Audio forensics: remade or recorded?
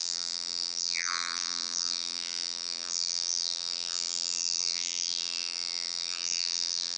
remade